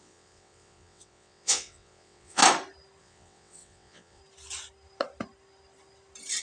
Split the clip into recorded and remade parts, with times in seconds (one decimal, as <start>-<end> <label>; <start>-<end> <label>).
0.0-2.4 remade; 2.4-3.0 recorded; 3.0-4.2 remade; 4.2-6.4 recorded